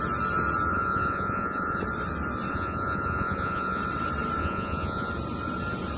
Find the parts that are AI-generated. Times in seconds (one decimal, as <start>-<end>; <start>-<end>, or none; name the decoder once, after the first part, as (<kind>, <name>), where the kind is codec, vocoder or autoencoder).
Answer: 0.7-1.8 (vocoder, Vocos); 2.5-3.8; 4.4-5.1